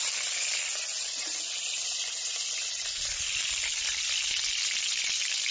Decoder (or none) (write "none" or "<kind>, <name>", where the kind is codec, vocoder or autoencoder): none